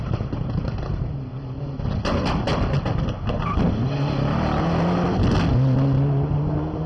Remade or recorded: recorded